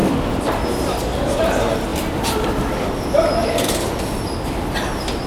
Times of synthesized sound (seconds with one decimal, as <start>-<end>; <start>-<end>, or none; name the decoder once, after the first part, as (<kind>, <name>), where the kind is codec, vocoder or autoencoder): 0.0-0.7 (vocoder, BigVGAN v2); 1.9-4.7